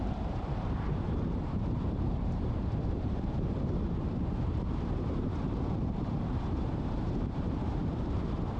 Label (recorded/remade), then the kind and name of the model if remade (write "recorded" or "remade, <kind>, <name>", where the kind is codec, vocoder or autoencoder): remade, vocoder, BigVGAN v2